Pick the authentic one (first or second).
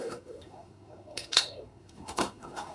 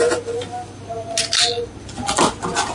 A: second